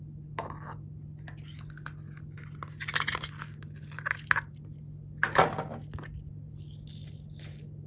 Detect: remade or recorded recorded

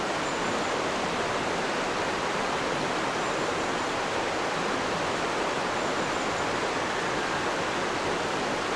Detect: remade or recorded recorded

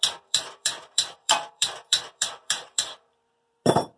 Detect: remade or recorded remade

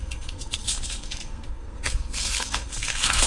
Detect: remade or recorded remade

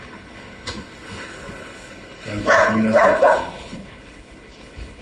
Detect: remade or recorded remade